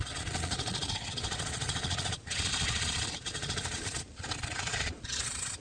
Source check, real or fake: fake